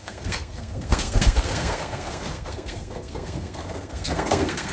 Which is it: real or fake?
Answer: fake